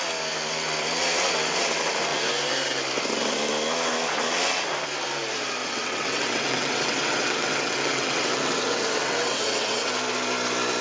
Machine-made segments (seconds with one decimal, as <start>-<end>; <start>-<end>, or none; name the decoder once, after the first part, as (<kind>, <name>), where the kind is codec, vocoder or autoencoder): 5.6-9.9 (vocoder, WaveNeXt)